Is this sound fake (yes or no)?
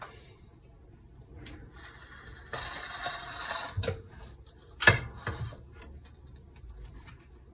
yes